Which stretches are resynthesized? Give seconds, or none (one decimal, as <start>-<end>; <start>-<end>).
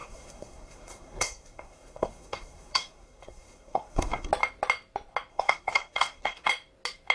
0.0-4.3; 5.3-6.5